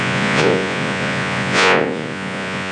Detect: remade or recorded remade